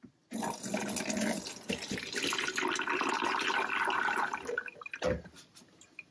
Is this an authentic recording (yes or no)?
yes